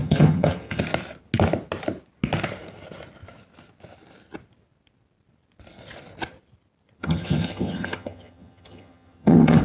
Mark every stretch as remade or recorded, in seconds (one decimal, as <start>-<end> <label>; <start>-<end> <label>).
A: 0.0-0.8 remade; 0.8-7.0 recorded; 7.0-9.6 remade